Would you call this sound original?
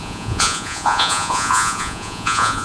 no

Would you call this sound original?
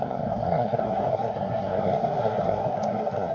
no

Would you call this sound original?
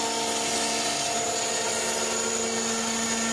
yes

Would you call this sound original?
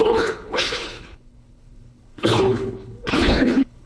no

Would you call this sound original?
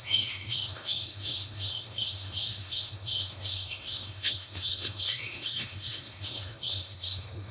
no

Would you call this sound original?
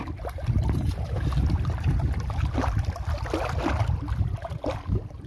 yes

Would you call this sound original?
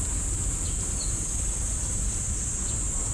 yes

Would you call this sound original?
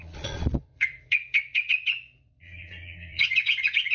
no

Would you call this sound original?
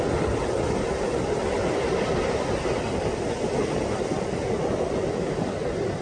yes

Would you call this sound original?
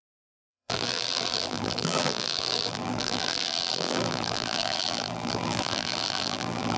no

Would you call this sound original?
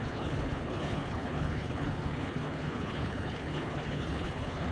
no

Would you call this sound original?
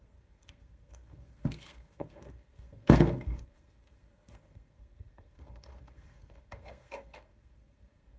no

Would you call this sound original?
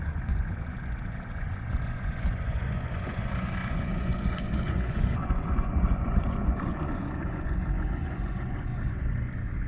no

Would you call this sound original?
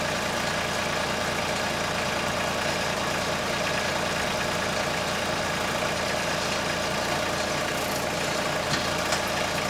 yes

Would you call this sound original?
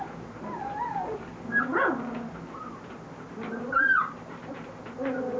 yes